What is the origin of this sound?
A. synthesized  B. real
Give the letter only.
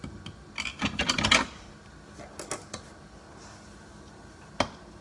B